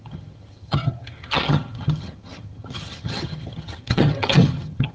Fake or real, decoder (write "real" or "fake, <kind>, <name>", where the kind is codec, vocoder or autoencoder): fake, vocoder, HiFi-GAN